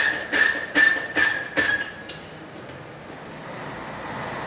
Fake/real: real